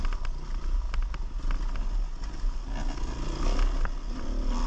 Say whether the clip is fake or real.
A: real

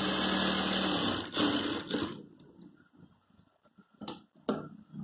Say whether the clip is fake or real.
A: real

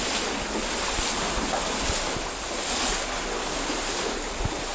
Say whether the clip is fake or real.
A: real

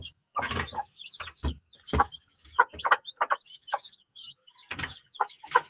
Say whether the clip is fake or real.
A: fake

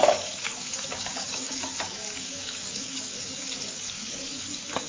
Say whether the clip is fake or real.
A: fake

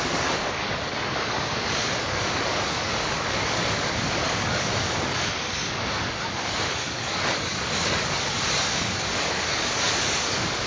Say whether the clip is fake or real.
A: fake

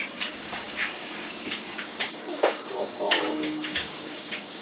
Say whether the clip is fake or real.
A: fake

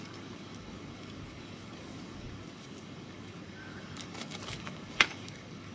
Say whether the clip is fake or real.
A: fake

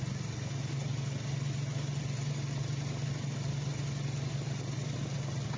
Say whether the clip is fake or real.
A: real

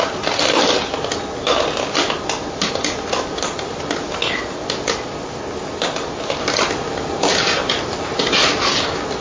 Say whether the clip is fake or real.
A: real